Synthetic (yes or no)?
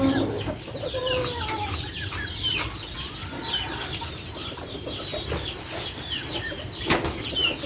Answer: no